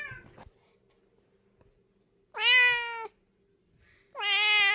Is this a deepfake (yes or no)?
no